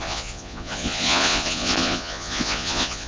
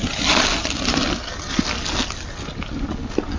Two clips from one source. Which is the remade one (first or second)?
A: first